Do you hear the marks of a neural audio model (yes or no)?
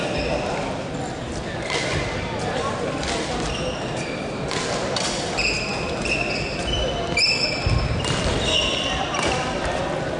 no